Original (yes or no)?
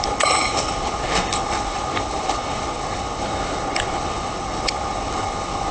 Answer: no